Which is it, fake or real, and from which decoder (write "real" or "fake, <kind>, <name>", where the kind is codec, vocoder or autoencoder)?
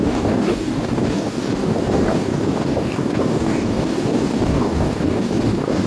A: fake, codec, DAC